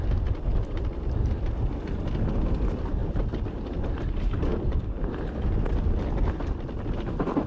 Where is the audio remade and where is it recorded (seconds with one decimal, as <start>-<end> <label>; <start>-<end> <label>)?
0.0-7.5 recorded